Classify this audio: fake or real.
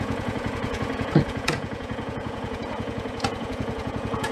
fake